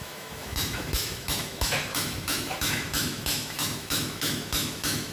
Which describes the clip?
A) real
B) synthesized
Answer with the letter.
B